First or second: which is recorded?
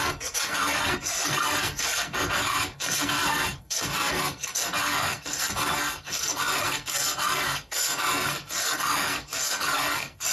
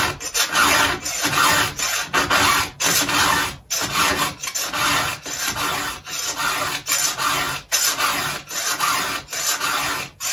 second